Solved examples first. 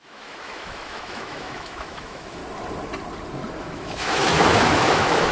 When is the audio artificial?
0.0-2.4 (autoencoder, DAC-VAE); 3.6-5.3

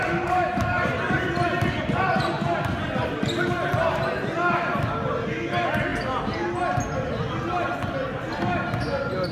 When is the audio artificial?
none

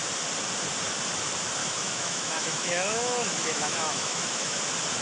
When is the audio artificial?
1.6-4.6 (autoencoder, DAC-VAE)

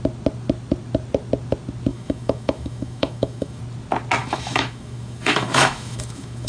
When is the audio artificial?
1.9-3.6 (autoencoder, DAC-VAE); 4.2-6.5

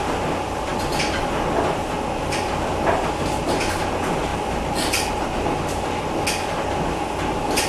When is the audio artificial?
none

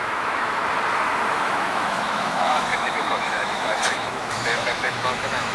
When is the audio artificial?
0.0-0.6 (autoencoder, DAC-VAE); 1.3-5.5